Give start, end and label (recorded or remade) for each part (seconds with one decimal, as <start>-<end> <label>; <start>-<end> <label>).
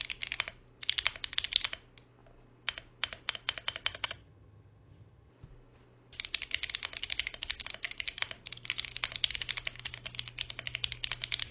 0.0-3.9 recorded; 3.9-5.3 remade; 5.3-11.5 recorded